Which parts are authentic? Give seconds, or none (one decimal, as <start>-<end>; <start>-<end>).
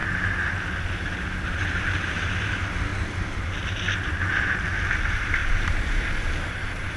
0.0-2.9; 3.5-5.4